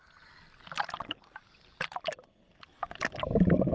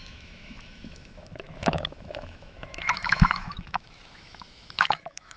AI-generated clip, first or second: second